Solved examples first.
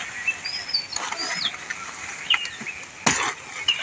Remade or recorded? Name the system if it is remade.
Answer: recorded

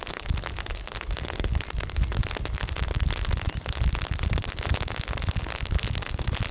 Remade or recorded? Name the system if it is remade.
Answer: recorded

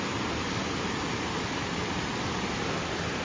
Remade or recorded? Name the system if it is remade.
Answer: recorded